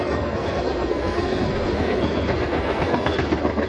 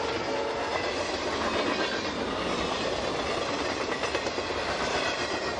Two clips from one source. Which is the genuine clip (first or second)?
second